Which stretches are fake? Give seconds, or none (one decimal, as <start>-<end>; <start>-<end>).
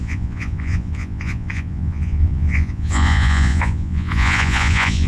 0.0-5.1